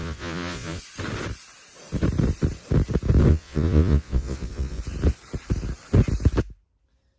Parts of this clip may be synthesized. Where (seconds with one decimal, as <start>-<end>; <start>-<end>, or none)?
0.0-0.8; 3.3-4.8